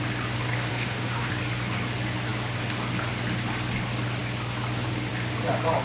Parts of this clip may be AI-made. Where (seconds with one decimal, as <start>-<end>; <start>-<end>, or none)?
0.7-1.3